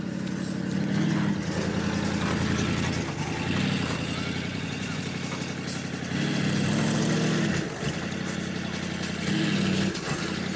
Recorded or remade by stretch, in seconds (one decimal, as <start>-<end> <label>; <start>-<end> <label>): 0.0-4.5 recorded; 4.5-5.0 remade; 5.0-10.6 recorded